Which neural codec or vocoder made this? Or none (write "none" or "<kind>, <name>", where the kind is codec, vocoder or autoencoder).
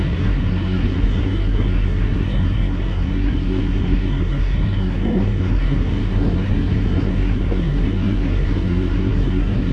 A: codec, SNAC